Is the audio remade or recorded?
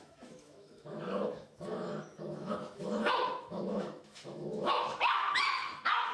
remade